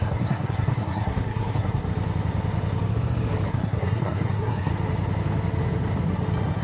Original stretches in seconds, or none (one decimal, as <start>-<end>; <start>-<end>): 1.9-3.5; 4.7-6.6

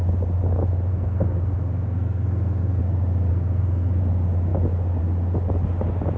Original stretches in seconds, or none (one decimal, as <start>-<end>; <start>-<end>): 0.0-0.9; 2.8-3.3; 4.0-6.2

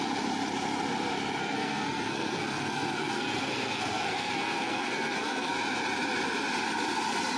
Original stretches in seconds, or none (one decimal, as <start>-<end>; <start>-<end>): 0.0-1.4; 5.5-7.4

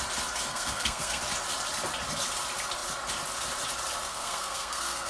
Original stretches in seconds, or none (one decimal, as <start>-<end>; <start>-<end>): 0.0-0.5; 1.2-4.1